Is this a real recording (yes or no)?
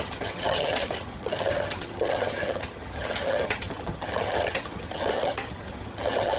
no